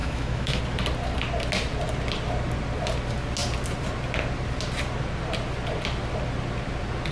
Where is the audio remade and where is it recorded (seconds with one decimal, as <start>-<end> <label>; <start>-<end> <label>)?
0.0-0.6 remade; 0.6-7.1 recorded